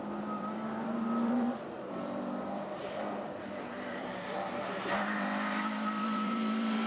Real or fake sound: fake